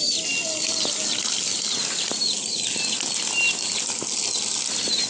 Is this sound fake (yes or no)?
no